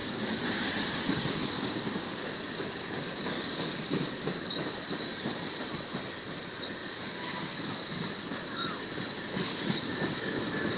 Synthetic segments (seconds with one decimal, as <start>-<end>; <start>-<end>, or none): 0.0-4.5; 6.8-8.1; 9.3-10.4